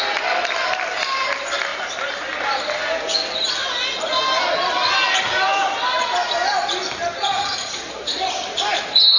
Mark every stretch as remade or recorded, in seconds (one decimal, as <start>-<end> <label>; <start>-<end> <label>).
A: 0.0-7.2 recorded; 7.2-7.8 remade; 7.8-9.2 recorded